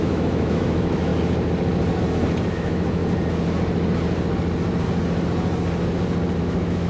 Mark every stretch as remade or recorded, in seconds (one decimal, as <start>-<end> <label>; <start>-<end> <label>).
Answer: 0.0-1.1 remade; 1.1-2.5 recorded; 2.5-3.0 remade; 3.0-6.4 recorded; 6.4-6.9 remade